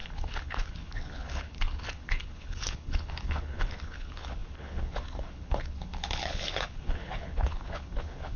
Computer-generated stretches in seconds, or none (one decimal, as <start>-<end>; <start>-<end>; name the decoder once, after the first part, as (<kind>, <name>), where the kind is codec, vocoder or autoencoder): 0.0-8.4 (codec, HILCodec)